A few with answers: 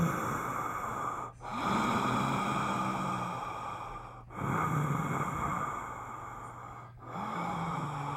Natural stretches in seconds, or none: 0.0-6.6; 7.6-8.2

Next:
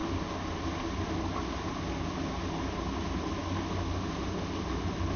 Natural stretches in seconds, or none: 0.0-5.2

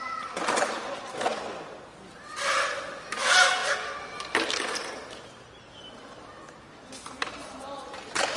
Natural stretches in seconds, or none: 0.0-8.4